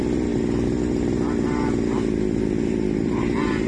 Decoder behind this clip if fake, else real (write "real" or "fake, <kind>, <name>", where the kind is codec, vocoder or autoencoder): real